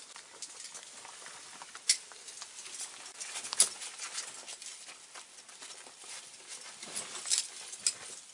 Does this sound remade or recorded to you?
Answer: recorded